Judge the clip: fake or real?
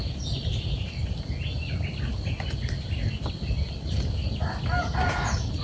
real